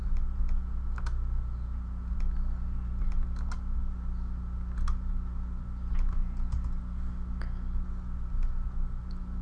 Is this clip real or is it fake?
real